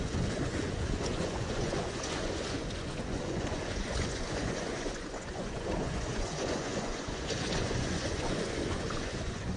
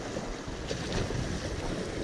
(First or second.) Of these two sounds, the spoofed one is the first